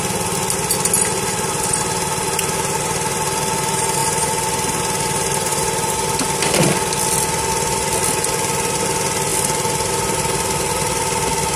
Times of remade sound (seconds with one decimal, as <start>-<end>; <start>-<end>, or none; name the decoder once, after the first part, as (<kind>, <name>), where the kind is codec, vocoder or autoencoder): none